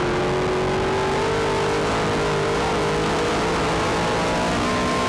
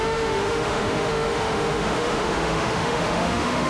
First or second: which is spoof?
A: second